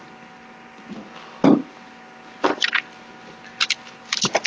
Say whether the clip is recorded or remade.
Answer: recorded